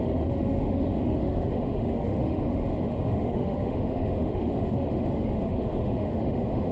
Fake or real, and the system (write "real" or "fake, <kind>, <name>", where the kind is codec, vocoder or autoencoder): fake, autoencoder, DAC-VAE